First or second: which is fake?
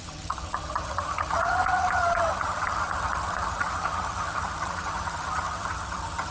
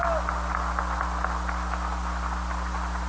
first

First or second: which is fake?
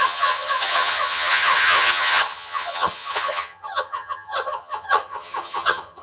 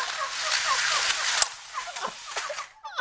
first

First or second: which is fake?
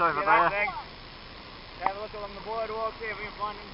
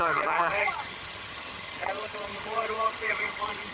second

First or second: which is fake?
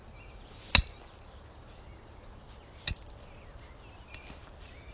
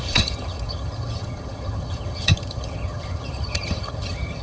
second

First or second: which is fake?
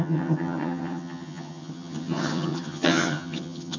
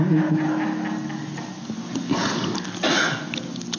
first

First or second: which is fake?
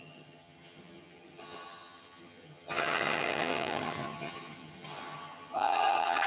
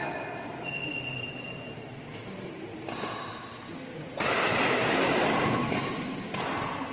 first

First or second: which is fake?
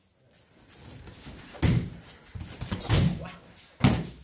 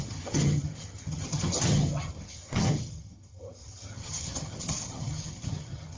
second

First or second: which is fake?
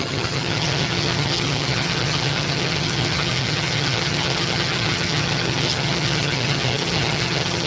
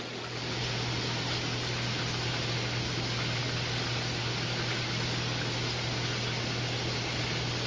first